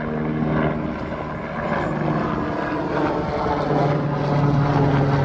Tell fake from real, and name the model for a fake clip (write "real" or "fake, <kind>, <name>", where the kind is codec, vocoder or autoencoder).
real